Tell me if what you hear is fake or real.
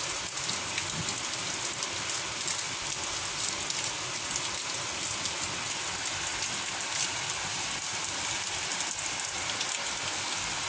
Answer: real